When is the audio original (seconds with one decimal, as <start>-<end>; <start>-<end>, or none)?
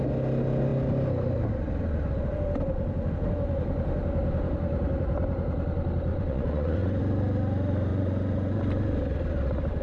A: 0.0-6.1; 7.0-7.9; 8.6-9.8